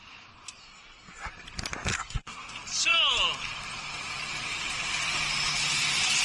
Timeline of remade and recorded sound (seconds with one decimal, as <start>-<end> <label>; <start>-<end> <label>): 0.0-0.6 recorded; 0.6-1.3 remade; 1.3-1.9 recorded; 1.9-2.5 remade; 2.5-6.2 recorded